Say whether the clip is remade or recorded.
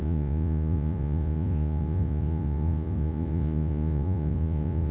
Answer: remade